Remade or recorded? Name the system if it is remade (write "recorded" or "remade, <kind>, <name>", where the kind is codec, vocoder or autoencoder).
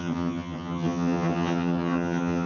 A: remade, vocoder, HiFi-GAN